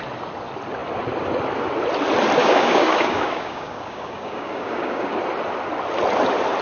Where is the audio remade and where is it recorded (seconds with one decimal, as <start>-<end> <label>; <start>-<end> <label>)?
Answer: 0.0-2.4 recorded; 2.4-5.2 remade; 5.2-6.6 recorded